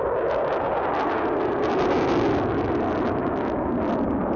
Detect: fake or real real